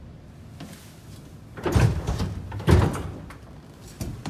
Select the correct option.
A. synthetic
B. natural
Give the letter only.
B